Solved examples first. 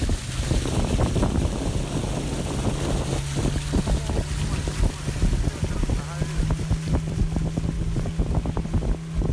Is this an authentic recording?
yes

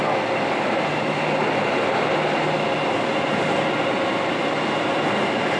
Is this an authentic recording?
yes